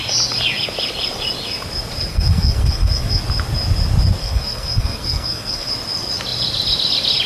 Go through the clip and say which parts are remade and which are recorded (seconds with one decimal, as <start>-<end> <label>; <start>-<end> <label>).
0.0-2.1 recorded; 2.1-3.2 remade; 3.2-4.2 recorded; 4.2-5.7 remade; 5.7-7.3 recorded